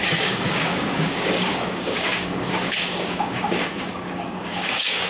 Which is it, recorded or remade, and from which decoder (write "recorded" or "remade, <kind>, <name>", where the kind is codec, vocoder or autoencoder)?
remade, codec, DAC